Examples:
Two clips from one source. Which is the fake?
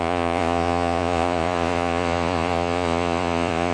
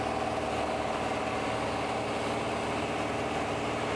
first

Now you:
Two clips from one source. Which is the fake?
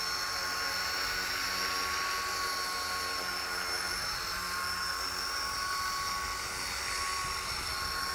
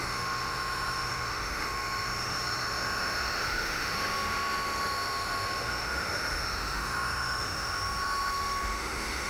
second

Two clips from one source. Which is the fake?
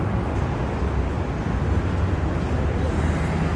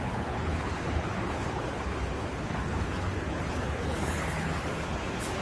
second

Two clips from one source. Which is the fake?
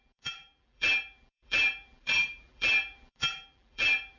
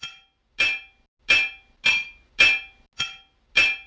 first